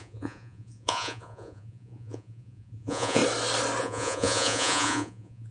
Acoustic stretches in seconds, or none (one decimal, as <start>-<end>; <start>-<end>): 3.2-3.8